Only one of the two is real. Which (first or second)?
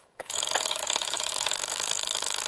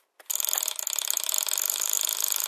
second